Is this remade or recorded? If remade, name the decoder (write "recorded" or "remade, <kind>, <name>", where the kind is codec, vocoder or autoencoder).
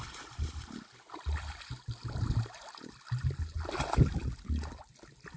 recorded